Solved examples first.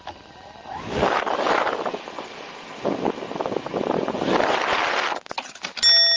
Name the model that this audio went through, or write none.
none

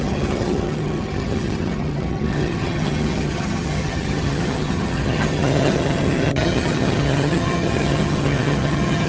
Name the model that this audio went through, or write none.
vocoder, HiFi-GAN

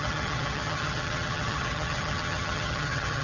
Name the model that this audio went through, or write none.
vocoder, HiFi-GAN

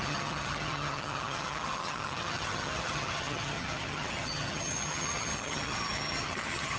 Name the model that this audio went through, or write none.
vocoder, HiFi-GAN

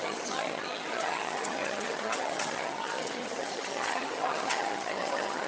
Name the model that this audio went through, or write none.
vocoder, HiFi-GAN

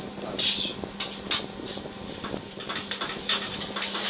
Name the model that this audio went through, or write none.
none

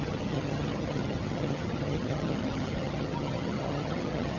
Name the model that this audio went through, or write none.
vocoder, HiFi-GAN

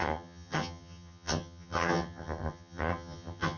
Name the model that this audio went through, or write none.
vocoder, HiFi-GAN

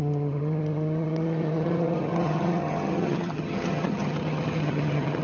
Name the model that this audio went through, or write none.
vocoder, HiFi-GAN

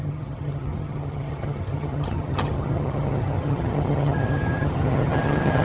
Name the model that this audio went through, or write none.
vocoder, HiFi-GAN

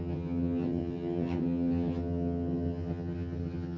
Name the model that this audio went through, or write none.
vocoder, HiFi-GAN